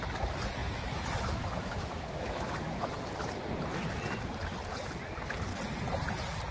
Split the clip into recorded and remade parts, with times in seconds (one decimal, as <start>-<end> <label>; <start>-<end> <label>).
0.0-0.6 recorded; 0.6-2.9 remade; 2.9-6.5 recorded